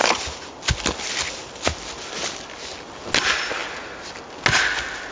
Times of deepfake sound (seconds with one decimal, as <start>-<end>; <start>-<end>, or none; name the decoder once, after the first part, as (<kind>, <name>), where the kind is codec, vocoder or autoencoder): none